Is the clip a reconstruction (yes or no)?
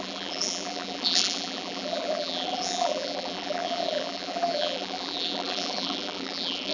yes